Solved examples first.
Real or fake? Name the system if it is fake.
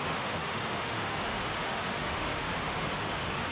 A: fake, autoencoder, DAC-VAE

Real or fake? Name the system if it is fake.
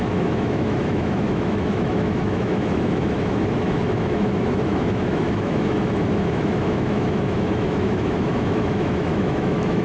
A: fake, autoencoder, DAC-VAE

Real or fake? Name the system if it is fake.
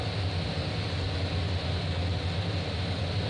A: real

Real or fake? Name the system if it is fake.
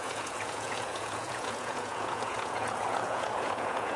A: fake, vocoder, Vocos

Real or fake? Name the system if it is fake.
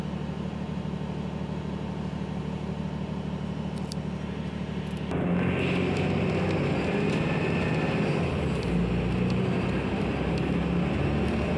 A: real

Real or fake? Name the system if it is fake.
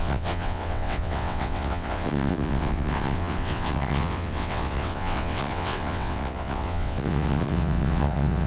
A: fake, vocoder, WaveNeXt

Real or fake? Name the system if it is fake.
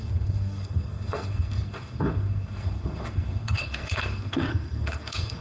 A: fake, codec, SNAC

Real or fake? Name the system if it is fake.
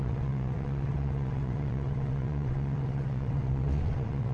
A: fake, vocoder, WaveNeXt